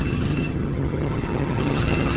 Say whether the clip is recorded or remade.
remade